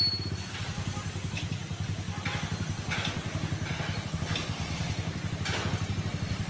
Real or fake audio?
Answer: real